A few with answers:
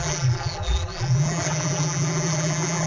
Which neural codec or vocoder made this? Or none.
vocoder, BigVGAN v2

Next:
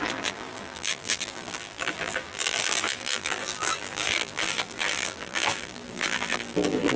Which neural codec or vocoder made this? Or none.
vocoder, BigVGAN v2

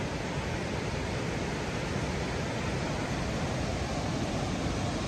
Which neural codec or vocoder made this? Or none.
none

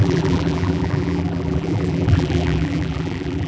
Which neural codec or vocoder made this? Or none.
vocoder, BigVGAN v2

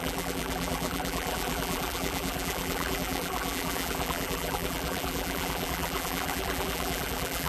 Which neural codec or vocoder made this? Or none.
vocoder, BigVGAN v2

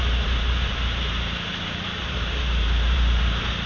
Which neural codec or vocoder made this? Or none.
vocoder, BigVGAN v2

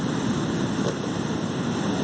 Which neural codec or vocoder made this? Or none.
none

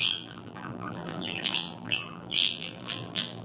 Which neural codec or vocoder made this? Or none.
vocoder, BigVGAN v2